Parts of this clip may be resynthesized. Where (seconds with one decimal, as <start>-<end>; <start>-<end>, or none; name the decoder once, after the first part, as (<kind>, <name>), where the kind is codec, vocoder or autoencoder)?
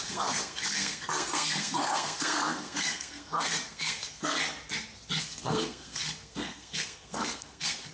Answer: 0.0-4.4 (codec, SNAC); 5.2-7.9